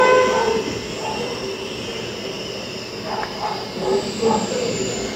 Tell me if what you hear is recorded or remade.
recorded